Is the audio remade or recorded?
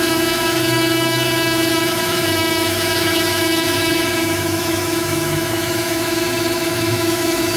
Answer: remade